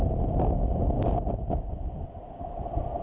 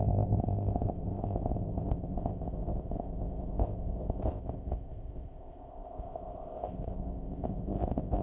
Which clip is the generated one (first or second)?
second